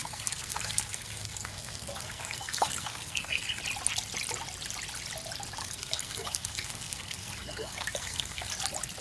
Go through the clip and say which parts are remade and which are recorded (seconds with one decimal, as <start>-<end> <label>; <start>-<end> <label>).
0.0-3.6 remade; 3.6-5.6 recorded; 5.6-8.5 remade; 8.5-9.0 recorded